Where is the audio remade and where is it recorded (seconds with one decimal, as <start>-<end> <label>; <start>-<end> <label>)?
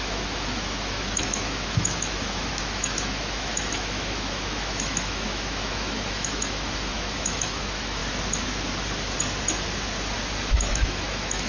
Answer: 0.0-8.0 remade; 8.0-10.5 recorded; 10.5-11.5 remade